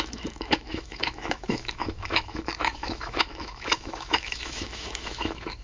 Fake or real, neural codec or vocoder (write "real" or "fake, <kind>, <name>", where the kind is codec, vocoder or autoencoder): fake, autoencoder, DAC-VAE